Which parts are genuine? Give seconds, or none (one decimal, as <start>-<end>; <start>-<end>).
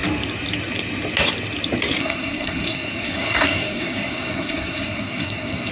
0.0-2.0